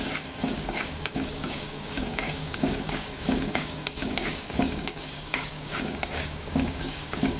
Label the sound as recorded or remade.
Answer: remade